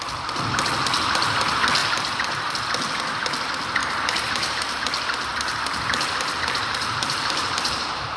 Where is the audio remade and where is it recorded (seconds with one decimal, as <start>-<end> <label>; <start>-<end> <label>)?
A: 0.0-1.8 recorded; 1.8-2.5 remade; 2.5-3.8 recorded; 3.8-4.8 remade; 4.8-5.3 recorded; 5.3-8.2 remade